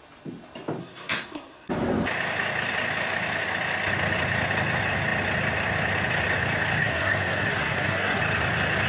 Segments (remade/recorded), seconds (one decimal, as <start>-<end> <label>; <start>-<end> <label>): 0.0-0.8 recorded; 0.8-1.7 remade; 1.7-6.8 recorded; 6.8-8.2 remade; 8.2-8.9 recorded